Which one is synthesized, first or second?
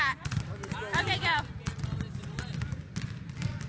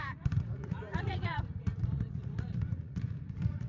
second